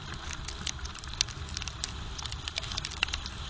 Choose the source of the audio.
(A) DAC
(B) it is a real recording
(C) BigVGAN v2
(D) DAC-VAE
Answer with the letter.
B